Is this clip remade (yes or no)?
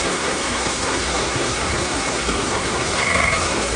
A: yes